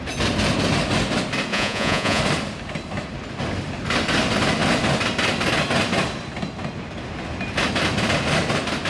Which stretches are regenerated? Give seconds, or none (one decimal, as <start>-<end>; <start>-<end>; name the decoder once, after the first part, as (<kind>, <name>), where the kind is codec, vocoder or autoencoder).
1.5-2.2 (vocoder, Vocos)